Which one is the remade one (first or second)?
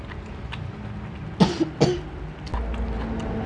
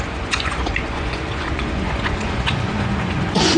second